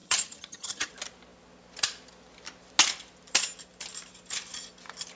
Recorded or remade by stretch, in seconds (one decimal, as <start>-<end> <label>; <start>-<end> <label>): 0.0-0.9 remade; 0.9-5.2 recorded